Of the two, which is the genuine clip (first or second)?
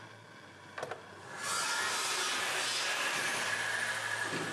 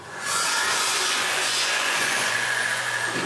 first